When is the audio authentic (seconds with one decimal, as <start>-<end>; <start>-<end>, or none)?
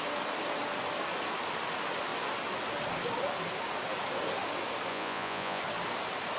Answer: 0.0-4.9; 5.6-6.4